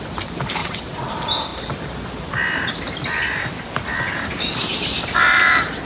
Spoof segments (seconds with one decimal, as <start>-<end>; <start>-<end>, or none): 0.6-1.1